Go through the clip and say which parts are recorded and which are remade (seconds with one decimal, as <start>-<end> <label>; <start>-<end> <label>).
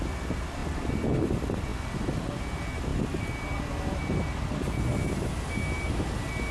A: 0.0-6.5 recorded